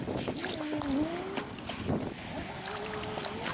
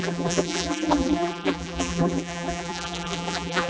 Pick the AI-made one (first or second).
second